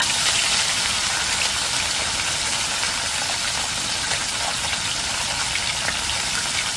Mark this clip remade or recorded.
remade